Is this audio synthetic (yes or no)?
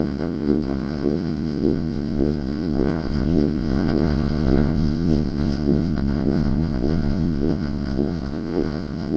yes